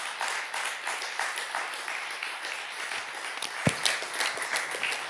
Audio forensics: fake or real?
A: real